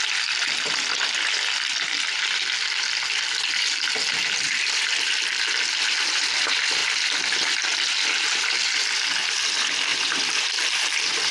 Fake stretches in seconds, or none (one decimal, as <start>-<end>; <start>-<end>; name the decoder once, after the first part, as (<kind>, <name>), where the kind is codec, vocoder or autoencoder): 0.0-6.8 (vocoder, BigVGAN v2); 8.4-11.3